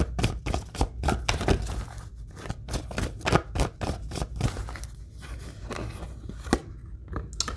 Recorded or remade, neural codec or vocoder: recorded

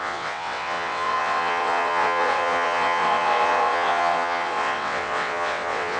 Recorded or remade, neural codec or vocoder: remade, vocoder, WaveNeXt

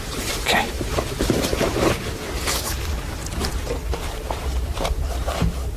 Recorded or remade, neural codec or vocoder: remade, vocoder, BigVGAN v2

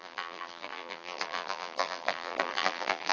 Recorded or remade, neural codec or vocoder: remade, vocoder, BigVGAN v2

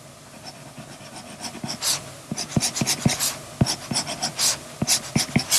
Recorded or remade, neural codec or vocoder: recorded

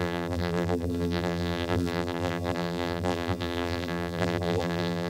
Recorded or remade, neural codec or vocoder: remade, vocoder, BigVGAN v2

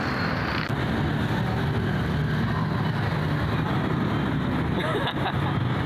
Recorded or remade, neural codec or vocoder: recorded